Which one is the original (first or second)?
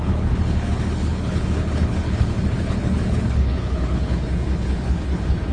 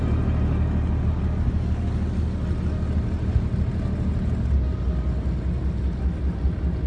second